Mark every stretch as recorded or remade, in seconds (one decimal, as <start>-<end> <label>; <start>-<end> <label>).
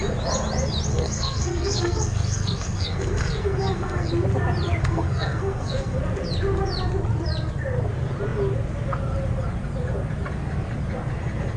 0.0-0.9 recorded; 0.9-4.1 remade; 4.1-4.8 recorded; 4.8-6.0 remade; 6.0-11.6 recorded